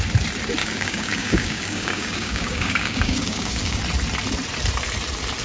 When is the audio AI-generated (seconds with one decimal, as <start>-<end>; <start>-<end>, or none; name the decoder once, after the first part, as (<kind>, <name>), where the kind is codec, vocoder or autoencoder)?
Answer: 0.6-3.8 (codec, DAC)